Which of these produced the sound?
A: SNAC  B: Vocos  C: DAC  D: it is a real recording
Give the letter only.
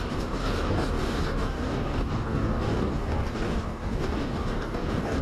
C